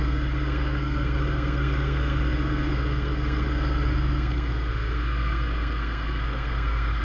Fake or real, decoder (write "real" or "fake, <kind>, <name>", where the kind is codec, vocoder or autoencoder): fake, codec, SNAC